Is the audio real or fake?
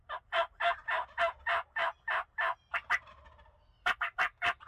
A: fake